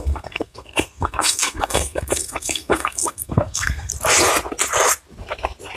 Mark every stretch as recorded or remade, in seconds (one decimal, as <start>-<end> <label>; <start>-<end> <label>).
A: 0.0-3.9 remade; 3.9-5.8 recorded